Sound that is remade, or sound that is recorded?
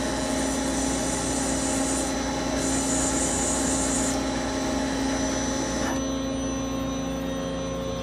recorded